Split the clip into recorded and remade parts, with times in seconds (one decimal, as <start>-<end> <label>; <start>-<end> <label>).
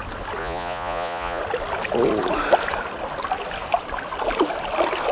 0.0-0.4 recorded; 0.4-1.4 remade; 1.4-5.1 recorded